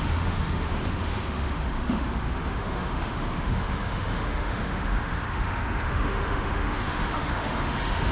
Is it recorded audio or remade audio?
remade